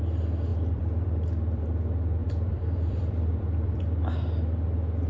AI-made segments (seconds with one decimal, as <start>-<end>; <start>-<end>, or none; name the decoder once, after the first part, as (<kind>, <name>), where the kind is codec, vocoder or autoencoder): 0.5-1.7 (vocoder, BigVGAN v2); 2.2-3.8